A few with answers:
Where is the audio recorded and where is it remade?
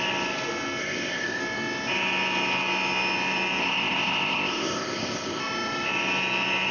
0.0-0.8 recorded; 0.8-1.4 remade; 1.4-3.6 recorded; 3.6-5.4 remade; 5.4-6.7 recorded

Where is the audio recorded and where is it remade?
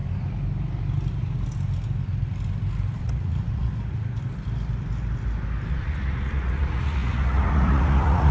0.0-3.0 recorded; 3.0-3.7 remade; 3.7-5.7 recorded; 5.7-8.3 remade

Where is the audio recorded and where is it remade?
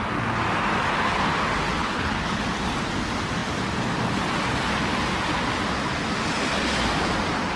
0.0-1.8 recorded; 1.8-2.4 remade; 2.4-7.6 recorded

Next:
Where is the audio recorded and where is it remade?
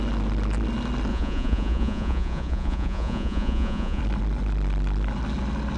0.0-1.1 recorded; 1.1-4.0 remade; 4.0-5.8 recorded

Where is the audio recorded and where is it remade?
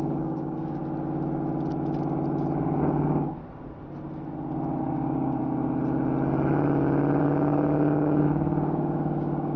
0.0-0.8 remade; 0.8-2.6 recorded; 2.6-3.4 remade; 3.4-4.8 recorded; 4.8-5.4 remade; 5.4-7.2 recorded; 7.2-9.6 remade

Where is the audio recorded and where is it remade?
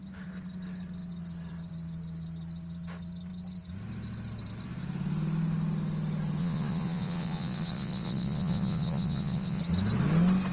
0.0-6.4 recorded; 6.4-9.6 remade; 9.6-10.5 recorded